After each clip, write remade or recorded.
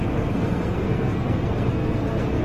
remade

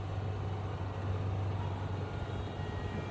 recorded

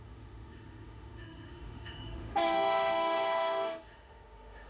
remade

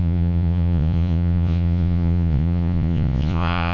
remade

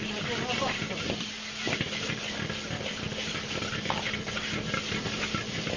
recorded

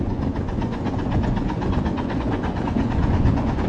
remade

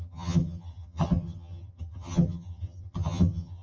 remade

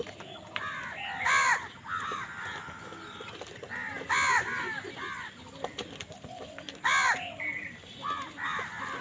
recorded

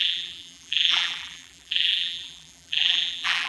remade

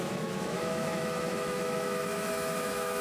remade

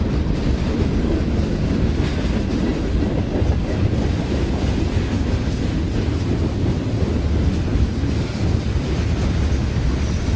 recorded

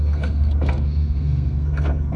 remade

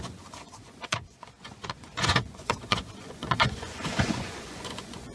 remade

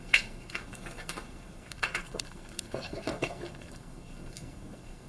remade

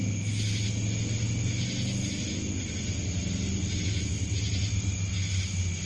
recorded